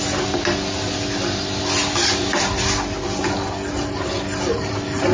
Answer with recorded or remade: recorded